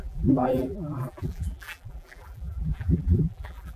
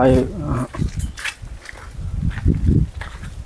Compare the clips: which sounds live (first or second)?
second